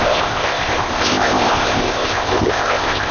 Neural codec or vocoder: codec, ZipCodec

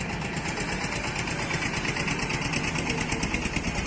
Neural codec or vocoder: none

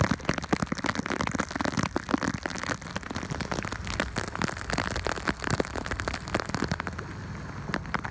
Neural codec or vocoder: none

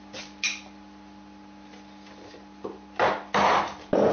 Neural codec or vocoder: none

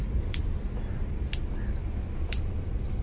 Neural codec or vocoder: none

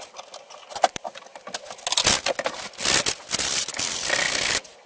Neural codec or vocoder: none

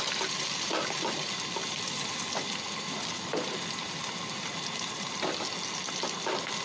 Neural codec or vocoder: none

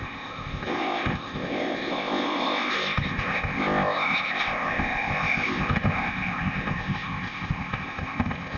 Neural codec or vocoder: codec, ZipCodec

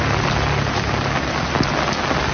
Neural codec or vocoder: none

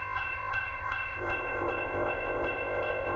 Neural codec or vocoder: codec, ZipCodec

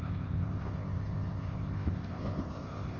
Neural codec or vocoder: codec, ZipCodec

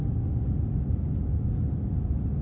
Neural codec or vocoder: none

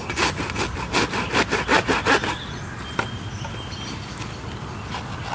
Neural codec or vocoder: none